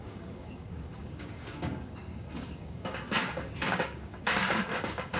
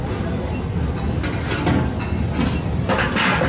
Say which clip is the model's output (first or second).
first